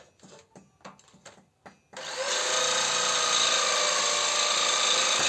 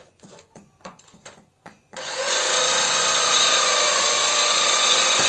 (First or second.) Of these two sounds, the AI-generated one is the second